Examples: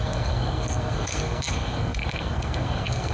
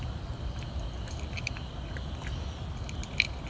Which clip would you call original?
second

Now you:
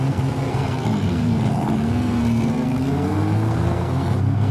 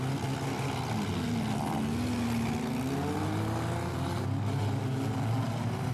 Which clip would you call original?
second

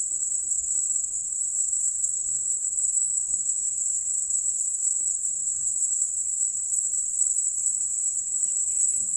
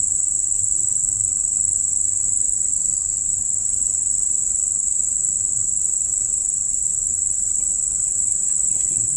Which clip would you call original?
second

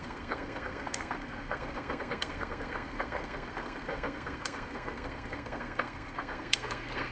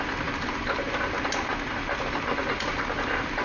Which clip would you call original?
second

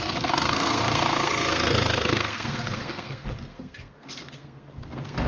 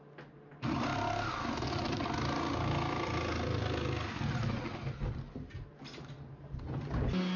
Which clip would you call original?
second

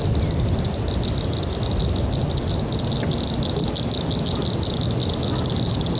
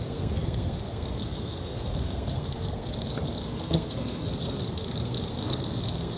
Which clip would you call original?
first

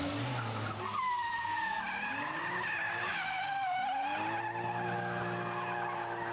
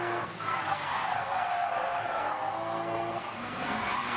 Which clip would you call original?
first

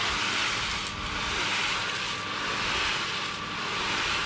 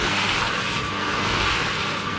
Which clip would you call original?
first